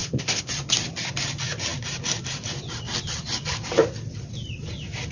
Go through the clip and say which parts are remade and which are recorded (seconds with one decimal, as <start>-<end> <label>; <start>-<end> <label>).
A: 0.0-0.5 remade; 0.5-5.1 recorded